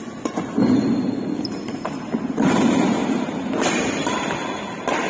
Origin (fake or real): real